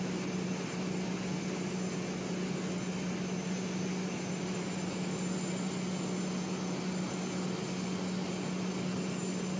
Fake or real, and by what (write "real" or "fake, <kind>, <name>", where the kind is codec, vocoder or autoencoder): real